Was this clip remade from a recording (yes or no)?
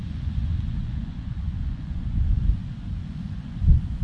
yes